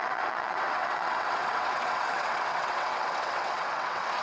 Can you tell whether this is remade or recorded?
remade